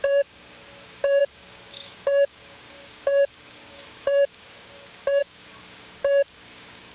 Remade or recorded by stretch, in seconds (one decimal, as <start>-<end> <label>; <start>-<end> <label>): 0.0-6.9 remade